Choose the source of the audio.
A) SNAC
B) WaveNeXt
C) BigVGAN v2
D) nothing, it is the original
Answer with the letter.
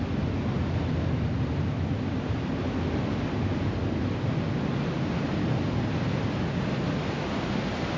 D